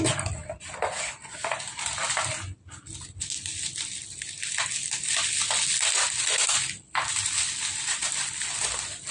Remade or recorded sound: recorded